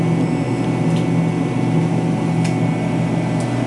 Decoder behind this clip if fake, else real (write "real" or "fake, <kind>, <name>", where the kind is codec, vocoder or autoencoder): real